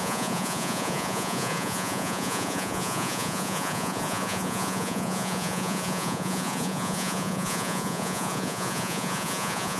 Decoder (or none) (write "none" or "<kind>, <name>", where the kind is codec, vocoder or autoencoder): vocoder, Vocos